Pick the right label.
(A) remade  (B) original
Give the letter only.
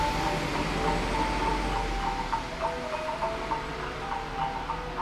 B